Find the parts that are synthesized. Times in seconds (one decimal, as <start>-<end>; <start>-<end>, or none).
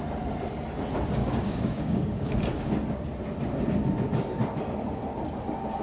1.2-2.3